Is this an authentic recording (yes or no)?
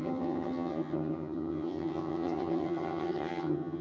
no